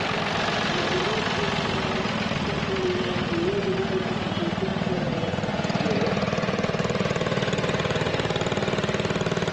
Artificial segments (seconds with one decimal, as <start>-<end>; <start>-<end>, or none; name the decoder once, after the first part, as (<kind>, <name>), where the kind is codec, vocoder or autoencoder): 4.7-8.1 (vocoder, Vocos)